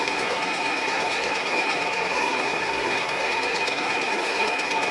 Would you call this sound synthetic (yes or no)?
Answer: yes